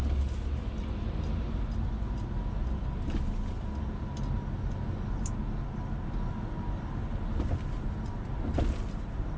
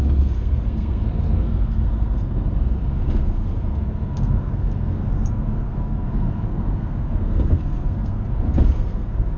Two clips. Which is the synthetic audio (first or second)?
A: second